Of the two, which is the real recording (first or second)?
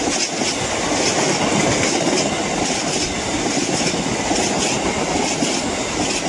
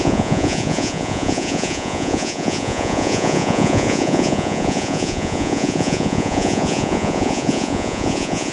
first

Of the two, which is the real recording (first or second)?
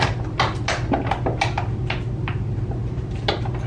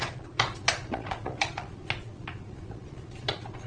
first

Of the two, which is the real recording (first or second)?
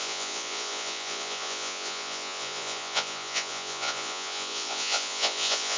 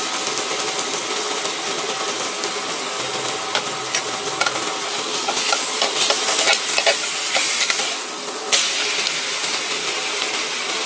second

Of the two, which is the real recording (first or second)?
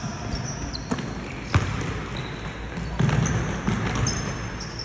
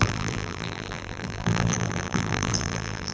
first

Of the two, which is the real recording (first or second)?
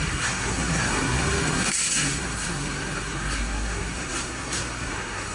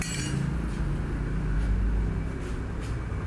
second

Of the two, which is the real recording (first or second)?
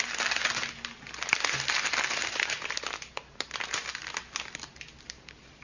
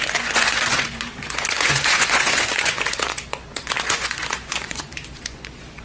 first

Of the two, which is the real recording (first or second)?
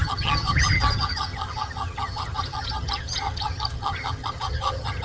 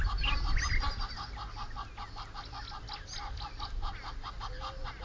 second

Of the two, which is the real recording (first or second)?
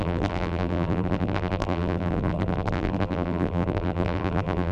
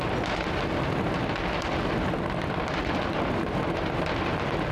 second